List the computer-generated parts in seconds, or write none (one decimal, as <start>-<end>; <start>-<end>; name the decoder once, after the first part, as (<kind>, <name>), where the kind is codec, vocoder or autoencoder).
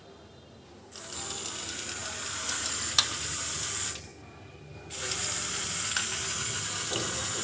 none